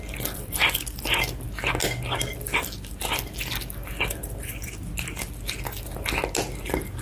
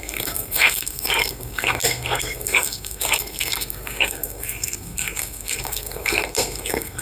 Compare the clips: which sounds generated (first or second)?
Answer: second